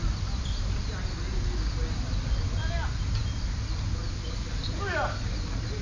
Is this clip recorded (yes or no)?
yes